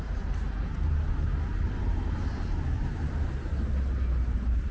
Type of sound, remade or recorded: recorded